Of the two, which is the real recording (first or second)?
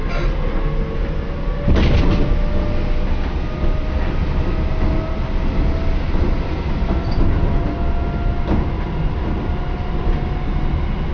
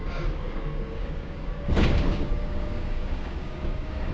first